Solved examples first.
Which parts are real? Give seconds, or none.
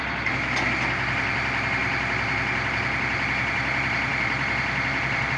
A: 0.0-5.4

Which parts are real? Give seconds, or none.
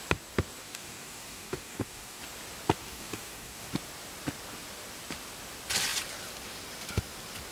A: 0.0-0.6; 2.2-2.8; 3.7-7.5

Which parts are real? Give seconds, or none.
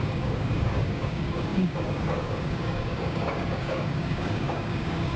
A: none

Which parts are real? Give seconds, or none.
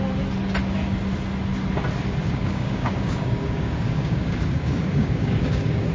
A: 0.0-2.2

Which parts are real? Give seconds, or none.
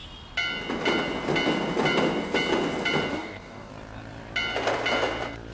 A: 0.0-3.1; 3.7-5.5